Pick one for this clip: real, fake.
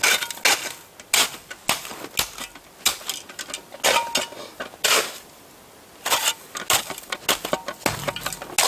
real